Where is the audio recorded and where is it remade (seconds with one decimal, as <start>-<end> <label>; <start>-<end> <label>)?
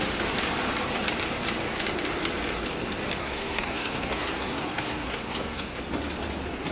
0.0-3.2 recorded; 3.2-5.8 remade; 5.8-6.7 recorded